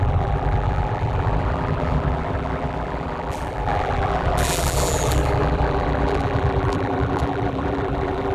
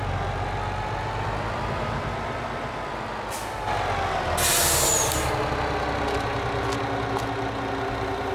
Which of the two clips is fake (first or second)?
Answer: first